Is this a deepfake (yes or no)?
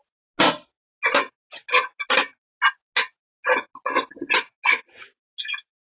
no